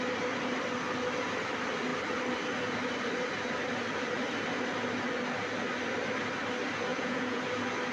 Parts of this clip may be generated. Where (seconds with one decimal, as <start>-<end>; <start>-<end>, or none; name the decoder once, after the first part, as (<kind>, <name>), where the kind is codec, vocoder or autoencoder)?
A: 6.9-7.4 (vocoder, Vocos)